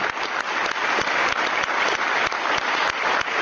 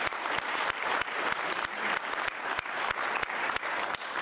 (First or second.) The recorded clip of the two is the first